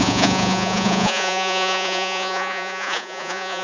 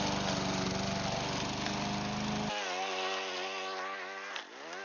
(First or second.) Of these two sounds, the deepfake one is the first